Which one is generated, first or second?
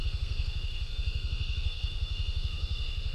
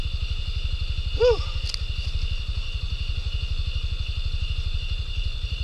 first